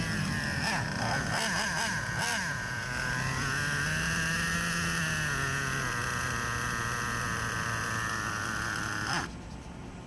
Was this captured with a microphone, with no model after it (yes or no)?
yes